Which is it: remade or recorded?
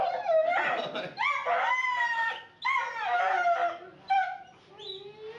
recorded